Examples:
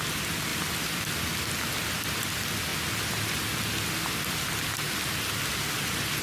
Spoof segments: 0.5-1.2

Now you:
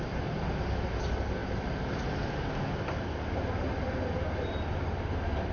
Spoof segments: none